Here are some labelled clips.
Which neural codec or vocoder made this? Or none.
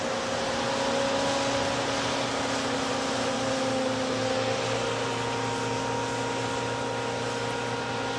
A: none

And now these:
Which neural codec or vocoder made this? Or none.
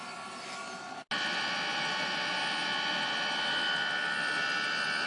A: none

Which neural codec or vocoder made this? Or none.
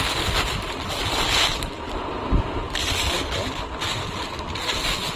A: none